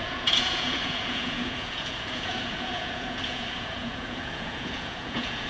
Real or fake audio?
fake